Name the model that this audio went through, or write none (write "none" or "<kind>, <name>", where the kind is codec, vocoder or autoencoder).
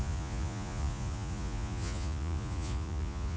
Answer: vocoder, Vocos